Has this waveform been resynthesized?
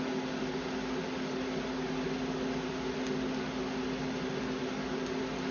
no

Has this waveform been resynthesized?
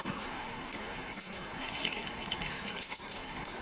yes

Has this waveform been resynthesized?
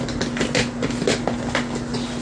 no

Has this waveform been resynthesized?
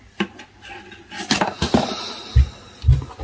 no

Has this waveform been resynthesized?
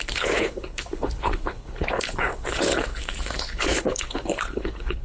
yes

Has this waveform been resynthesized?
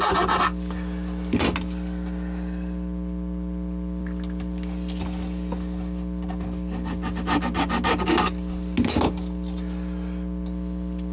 no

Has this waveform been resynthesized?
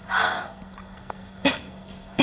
yes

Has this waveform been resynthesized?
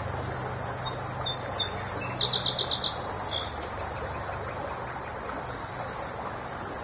no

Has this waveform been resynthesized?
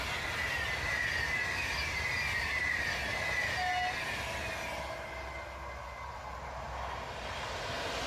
no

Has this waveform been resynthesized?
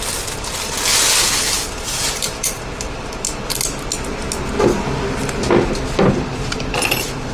no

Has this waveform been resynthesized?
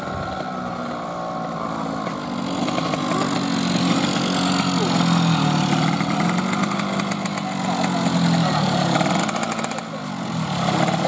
no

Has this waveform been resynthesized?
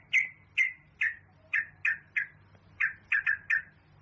no